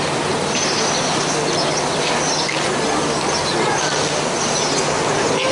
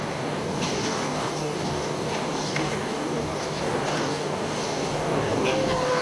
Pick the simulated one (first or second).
second